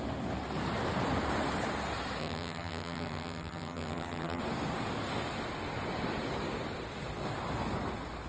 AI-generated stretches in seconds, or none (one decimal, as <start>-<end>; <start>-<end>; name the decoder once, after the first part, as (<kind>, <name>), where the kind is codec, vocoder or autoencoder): 2.2-4.4 (vocoder, HiFi-GAN)